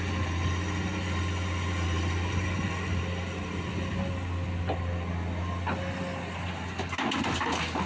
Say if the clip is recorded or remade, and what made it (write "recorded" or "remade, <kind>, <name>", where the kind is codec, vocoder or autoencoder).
recorded